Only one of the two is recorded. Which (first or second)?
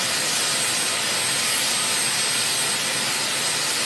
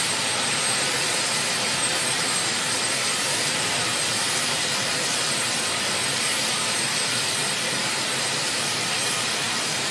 first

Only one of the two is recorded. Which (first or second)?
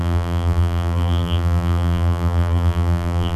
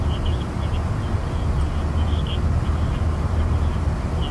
second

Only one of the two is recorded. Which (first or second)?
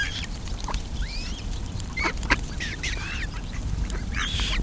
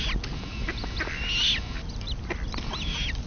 second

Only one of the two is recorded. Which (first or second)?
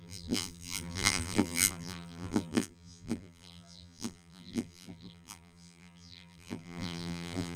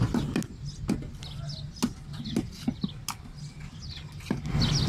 second